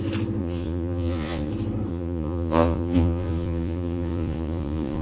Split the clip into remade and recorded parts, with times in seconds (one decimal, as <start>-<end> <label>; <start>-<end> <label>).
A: 0.0-0.4 recorded; 0.4-1.5 remade; 1.5-1.9 recorded; 1.9-5.0 remade